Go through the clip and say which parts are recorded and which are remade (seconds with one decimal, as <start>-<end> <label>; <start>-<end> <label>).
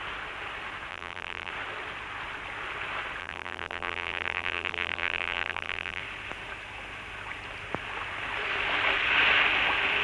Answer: 0.0-0.9 recorded; 0.9-1.5 remade; 1.5-3.2 recorded; 3.2-6.0 remade; 6.0-10.0 recorded